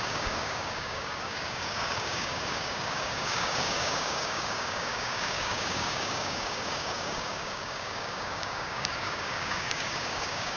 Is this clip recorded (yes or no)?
no